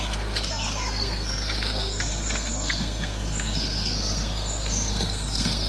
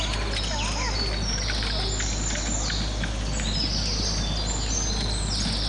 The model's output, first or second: first